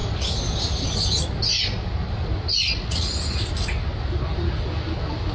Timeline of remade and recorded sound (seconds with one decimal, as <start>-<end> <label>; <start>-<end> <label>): 0.0-2.5 recorded; 2.5-3.1 remade; 3.1-5.3 recorded